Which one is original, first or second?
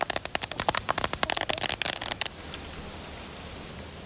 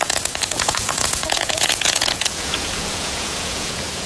first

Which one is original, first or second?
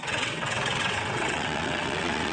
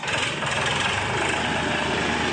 second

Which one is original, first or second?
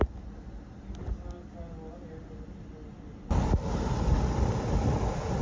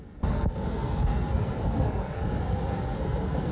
first